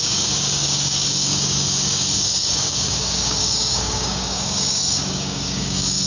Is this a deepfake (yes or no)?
yes